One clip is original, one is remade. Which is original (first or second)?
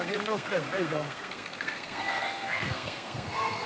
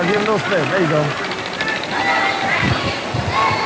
second